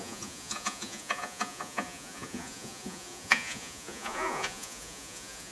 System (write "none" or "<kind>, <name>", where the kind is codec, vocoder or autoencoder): vocoder, Vocos